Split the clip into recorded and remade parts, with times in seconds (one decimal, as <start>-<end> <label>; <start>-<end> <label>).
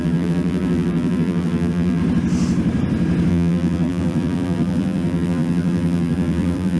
0.0-2.0 remade; 2.0-3.3 recorded; 3.3-6.8 remade